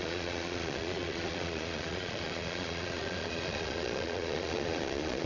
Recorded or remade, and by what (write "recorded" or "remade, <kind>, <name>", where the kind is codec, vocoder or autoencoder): remade, vocoder, Vocos